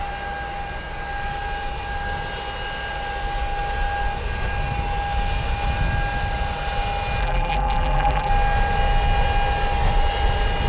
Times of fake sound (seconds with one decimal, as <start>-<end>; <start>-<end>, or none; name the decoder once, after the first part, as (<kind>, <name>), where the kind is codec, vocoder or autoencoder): 7.2-8.3 (vocoder, BigVGAN v2)